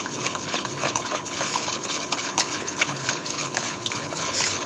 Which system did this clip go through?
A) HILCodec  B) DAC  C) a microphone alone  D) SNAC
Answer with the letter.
A